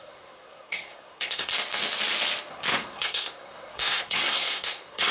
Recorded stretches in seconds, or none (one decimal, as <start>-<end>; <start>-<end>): 1.5-2.5